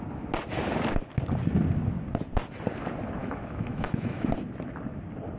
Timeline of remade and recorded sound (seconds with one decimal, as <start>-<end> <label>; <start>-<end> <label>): 0.0-3.2 recorded; 3.2-4.3 remade; 4.3-5.4 recorded